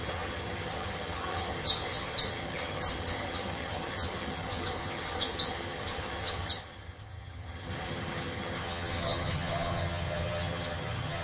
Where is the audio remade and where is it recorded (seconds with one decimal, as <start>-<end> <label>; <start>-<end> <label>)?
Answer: 0.0-11.2 remade